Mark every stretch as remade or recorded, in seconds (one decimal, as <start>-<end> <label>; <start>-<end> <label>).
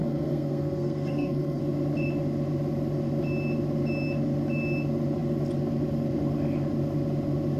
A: 0.0-1.6 remade; 1.6-7.6 recorded